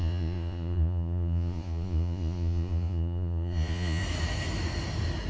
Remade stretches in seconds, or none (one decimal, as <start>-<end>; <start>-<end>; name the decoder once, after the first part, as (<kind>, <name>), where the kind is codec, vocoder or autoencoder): 0.0-4.0 (vocoder, Vocos)